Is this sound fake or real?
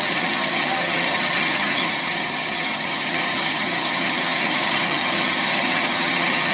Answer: fake